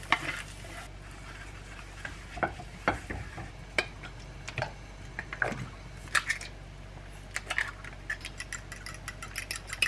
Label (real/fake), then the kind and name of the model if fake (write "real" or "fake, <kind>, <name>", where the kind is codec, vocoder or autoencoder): real